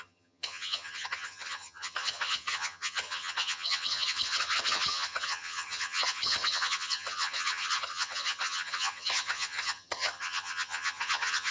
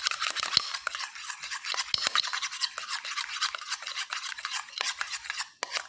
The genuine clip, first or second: second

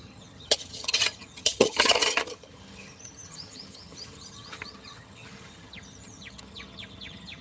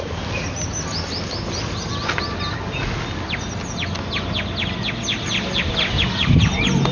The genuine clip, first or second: second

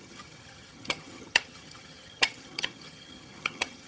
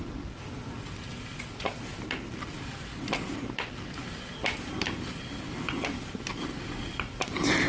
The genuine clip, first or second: second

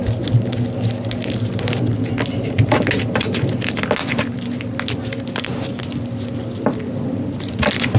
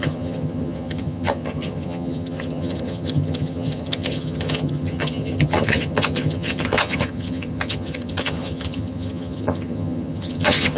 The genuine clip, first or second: first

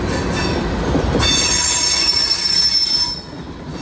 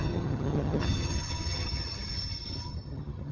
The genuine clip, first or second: first